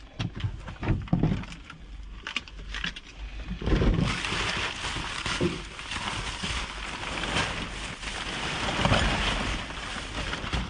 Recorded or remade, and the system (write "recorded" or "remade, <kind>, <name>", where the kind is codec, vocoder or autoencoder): recorded